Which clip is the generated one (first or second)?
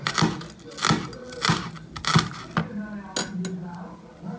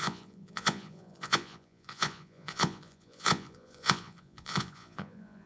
second